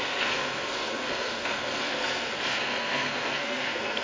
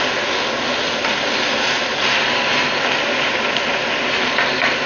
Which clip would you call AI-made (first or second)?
first